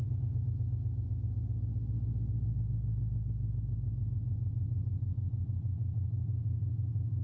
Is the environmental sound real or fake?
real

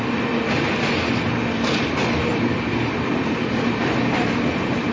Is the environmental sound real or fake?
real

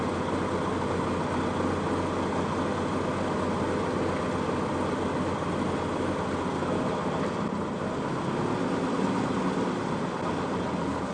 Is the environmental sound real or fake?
real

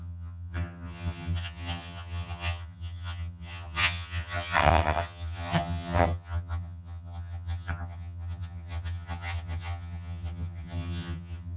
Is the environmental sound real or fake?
fake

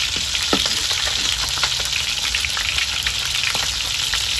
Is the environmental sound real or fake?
real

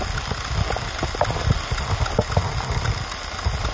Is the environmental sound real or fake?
real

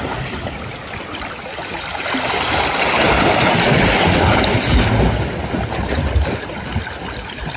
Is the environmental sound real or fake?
real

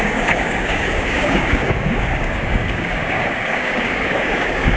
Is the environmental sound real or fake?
fake